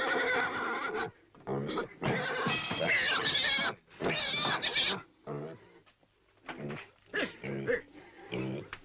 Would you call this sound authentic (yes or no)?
yes